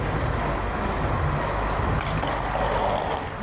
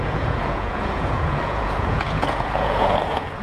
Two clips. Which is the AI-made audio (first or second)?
second